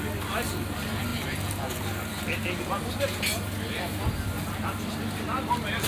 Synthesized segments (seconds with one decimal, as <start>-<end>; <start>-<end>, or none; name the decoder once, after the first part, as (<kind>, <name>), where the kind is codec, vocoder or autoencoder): none